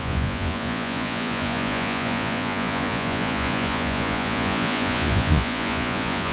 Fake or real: fake